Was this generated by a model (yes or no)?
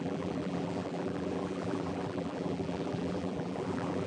yes